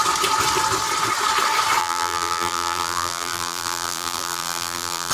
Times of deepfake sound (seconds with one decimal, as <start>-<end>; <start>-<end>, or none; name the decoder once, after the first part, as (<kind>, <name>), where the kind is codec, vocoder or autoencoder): 1.8-5.1 (vocoder, BigVGAN v2)